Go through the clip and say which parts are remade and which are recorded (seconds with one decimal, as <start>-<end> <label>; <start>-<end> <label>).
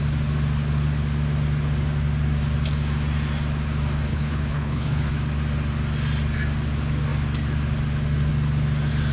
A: 0.0-4.1 recorded; 4.1-5.1 remade; 5.1-9.1 recorded